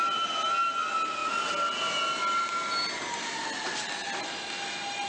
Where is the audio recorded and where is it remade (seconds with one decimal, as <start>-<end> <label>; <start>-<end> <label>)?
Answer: 0.0-5.1 recorded